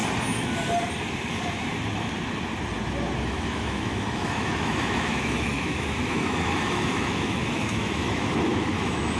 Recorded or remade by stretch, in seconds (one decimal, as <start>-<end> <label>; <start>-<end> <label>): 0.0-3.2 recorded; 3.2-9.2 remade